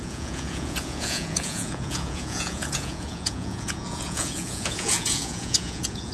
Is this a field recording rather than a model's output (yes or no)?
no